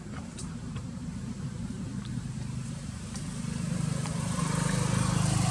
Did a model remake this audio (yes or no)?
yes